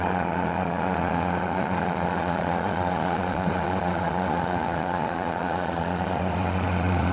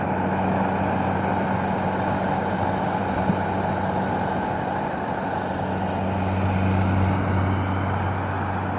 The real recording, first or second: second